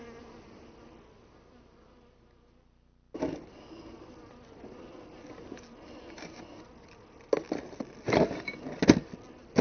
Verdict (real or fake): real